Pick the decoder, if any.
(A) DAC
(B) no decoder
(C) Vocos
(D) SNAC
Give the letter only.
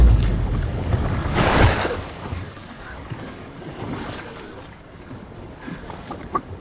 A